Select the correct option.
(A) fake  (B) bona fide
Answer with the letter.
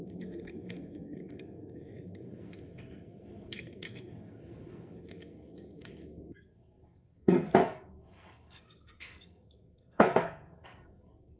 A